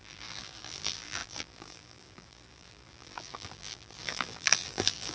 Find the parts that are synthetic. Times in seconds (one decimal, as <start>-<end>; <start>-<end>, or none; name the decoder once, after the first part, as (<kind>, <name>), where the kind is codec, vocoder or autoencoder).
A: 0.0-5.1 (vocoder, BigVGAN v2)